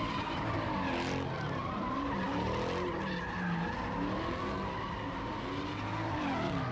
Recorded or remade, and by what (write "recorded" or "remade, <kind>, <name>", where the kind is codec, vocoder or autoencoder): recorded